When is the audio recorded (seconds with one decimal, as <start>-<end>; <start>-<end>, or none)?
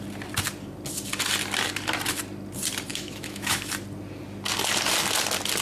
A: 0.0-2.9; 3.7-5.6